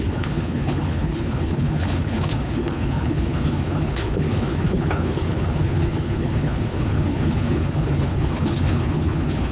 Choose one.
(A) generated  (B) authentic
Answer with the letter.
A